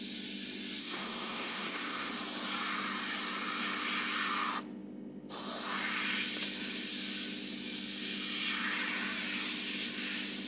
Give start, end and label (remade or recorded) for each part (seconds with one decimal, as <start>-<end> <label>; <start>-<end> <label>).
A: 0.0-0.8 recorded; 0.8-2.1 remade; 2.1-10.5 recorded